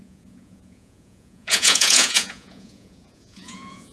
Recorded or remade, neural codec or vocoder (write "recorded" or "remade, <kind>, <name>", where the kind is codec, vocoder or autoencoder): remade, vocoder, Vocos